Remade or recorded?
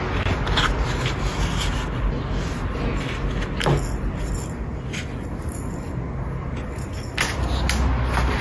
recorded